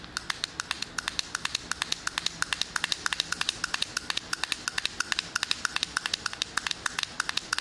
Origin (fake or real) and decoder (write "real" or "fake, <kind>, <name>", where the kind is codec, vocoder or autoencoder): real